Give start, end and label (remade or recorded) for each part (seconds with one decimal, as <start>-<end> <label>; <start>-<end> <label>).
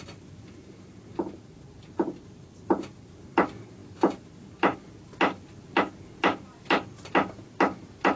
0.0-8.2 recorded